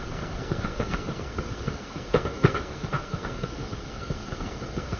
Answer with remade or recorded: remade